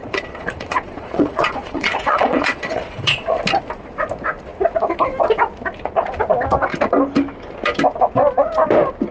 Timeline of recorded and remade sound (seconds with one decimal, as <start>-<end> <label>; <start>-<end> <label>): 0.0-3.4 remade; 3.4-9.1 recorded